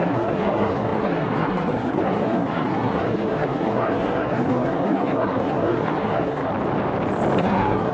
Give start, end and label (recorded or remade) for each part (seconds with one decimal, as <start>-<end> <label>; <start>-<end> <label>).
0.0-6.5 remade; 6.5-7.4 recorded; 7.4-7.9 remade